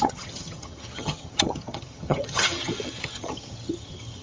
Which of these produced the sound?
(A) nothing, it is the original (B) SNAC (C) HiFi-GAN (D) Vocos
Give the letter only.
C